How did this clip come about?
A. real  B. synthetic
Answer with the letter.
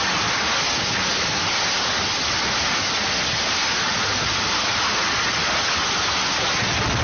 A